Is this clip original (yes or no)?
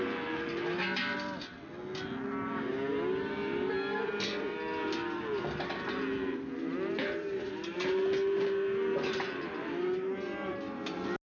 yes